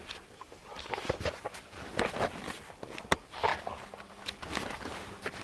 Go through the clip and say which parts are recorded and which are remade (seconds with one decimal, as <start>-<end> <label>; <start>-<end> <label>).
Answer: 0.0-5.4 recorded